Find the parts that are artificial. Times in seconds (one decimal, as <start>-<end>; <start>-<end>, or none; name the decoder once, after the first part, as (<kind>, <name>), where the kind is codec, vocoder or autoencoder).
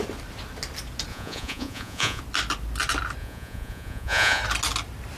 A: 1.1-2.2 (vocoder, Vocos); 3.2-4.4